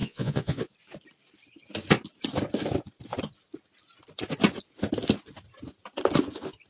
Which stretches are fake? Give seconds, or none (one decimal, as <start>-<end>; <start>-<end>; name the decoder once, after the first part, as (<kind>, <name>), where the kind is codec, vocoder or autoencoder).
0.0-0.6 (vocoder, Vocos)